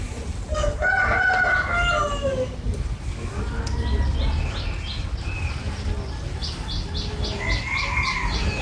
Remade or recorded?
recorded